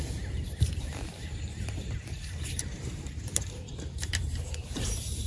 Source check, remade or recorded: remade